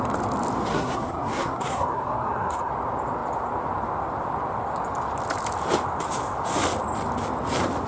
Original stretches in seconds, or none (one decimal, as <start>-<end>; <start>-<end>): 0.0-0.7; 2.7-7.9